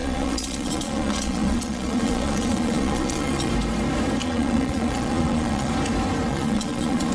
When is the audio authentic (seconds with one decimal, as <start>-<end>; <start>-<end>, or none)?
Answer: 3.5-4.2; 5.7-6.3